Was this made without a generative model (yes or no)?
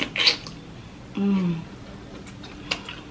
yes